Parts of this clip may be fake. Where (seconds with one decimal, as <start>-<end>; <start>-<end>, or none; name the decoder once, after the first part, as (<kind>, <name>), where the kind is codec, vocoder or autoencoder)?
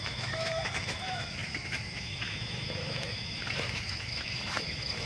0.0-5.1 (autoencoder, DAC-VAE)